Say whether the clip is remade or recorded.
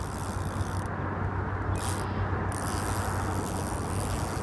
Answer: recorded